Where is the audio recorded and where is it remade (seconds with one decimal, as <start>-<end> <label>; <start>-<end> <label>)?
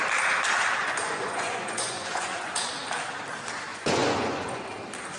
0.0-0.8 recorded; 0.8-2.7 remade; 2.7-3.7 recorded; 3.7-4.6 remade; 4.6-5.2 recorded